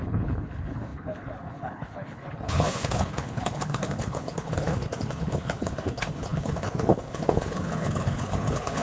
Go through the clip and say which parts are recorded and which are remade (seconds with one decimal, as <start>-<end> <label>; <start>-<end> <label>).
0.0-8.8 remade